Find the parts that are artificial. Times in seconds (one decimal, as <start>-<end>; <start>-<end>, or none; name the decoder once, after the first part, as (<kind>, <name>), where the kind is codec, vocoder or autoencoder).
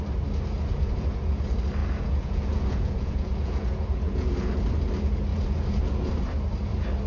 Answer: 0.7-1.4 (vocoder, Vocos); 1.8-4.5; 5.3-6.1